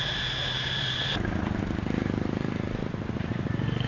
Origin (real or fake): real